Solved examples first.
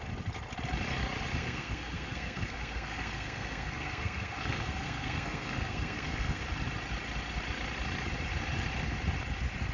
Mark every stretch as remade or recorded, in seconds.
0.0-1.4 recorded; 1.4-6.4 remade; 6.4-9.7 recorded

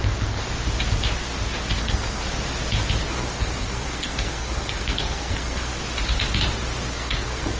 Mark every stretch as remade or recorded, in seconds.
0.0-0.4 remade; 0.4-1.8 recorded; 1.8-2.2 remade; 2.2-3.0 recorded; 3.0-5.7 remade; 5.7-6.9 recorded; 6.9-7.6 remade

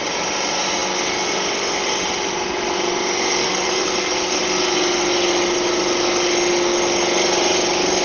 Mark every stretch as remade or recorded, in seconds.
0.0-3.4 recorded; 3.4-4.4 remade; 4.4-8.0 recorded